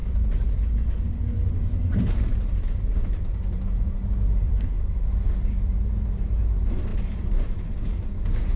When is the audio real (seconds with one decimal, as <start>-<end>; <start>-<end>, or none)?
none